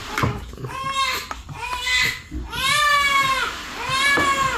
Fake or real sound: real